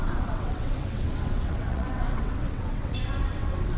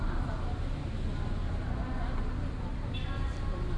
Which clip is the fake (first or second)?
first